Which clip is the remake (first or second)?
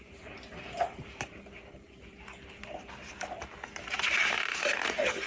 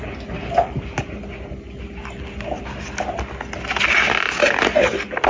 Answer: first